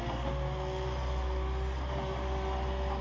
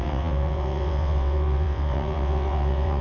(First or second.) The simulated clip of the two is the second